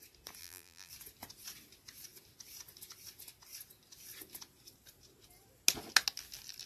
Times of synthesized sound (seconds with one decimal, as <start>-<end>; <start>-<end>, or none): 0.4-0.9